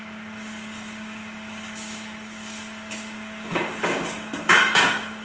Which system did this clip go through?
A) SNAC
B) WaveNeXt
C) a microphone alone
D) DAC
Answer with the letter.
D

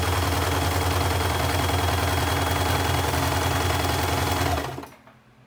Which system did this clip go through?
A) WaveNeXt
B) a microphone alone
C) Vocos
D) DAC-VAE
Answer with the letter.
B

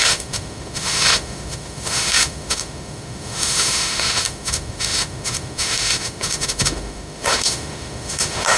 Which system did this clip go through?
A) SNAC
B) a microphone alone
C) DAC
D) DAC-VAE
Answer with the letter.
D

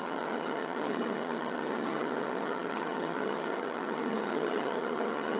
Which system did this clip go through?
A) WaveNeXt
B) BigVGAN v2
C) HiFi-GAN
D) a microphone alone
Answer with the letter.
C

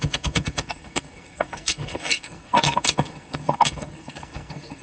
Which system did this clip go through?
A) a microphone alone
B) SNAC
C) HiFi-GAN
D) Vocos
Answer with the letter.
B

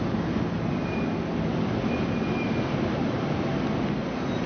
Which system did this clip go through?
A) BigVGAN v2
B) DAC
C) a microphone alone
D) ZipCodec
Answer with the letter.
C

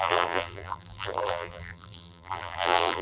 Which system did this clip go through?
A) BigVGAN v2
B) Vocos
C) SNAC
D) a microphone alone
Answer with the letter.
A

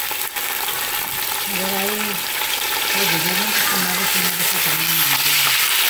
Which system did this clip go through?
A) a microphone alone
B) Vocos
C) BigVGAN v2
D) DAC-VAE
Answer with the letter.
A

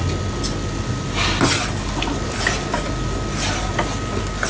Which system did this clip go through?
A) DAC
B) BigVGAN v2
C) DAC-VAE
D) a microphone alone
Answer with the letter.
D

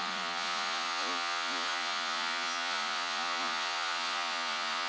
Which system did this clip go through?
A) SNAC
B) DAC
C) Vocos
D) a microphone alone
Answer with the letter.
C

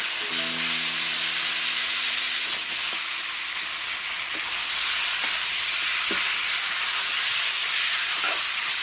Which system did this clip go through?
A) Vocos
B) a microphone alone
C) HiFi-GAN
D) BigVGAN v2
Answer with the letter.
B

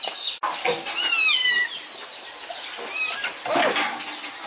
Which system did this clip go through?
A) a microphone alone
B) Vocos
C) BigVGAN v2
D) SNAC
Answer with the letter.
A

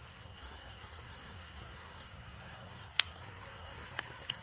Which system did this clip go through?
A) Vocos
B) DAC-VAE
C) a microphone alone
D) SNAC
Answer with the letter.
D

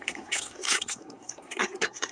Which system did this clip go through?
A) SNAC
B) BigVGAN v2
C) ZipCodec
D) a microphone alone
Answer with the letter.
A